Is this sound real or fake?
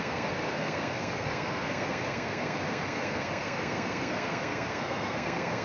fake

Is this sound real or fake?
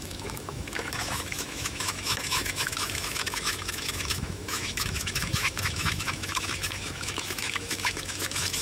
fake